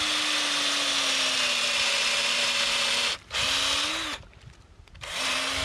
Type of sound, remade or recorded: recorded